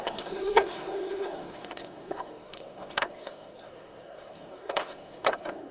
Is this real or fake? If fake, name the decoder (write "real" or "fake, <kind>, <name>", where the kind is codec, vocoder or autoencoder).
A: fake, codec, SNAC